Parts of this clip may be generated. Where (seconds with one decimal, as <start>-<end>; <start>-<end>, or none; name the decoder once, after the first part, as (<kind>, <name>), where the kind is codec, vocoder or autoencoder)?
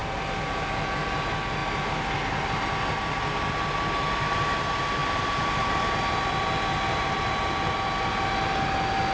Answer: none